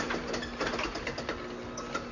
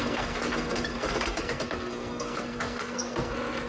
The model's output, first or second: second